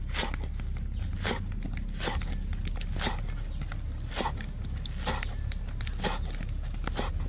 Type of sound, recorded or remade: recorded